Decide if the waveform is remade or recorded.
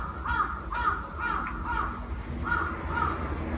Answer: recorded